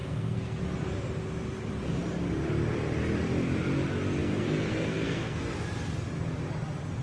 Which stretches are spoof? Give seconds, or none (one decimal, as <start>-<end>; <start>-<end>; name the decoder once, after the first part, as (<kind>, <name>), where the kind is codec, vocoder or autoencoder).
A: 0.0-0.6 (codec, SNAC); 4.2-5.4